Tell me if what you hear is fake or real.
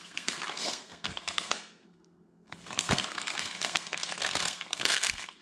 fake